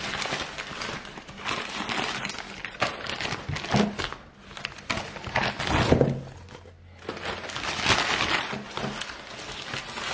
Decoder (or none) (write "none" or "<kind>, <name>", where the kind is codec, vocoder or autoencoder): none